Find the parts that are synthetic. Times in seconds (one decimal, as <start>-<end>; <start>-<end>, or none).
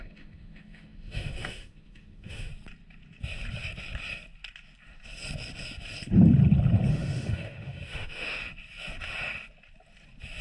0.0-2.5; 6.9-8.4